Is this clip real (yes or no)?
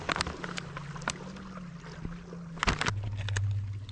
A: yes